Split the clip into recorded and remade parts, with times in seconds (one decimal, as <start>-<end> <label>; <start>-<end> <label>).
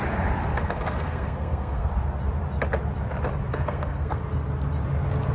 0.0-0.5 recorded; 0.5-1.9 remade; 1.9-3.5 recorded; 3.5-4.2 remade; 4.2-5.3 recorded